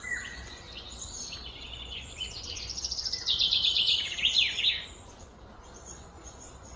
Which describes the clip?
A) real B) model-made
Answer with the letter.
B